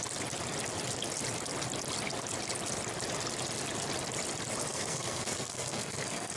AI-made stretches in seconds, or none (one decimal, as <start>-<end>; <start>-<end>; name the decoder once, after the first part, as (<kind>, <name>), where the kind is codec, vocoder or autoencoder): 4.7-6.4 (codec, SNAC)